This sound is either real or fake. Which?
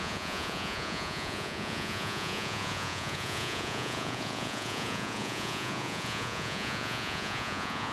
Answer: fake